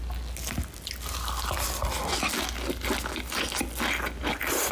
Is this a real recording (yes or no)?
yes